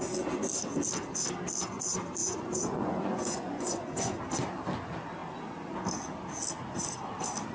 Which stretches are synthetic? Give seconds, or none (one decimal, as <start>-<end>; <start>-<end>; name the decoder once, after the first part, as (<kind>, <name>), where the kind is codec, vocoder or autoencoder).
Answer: 2.2-4.2 (vocoder, Vocos)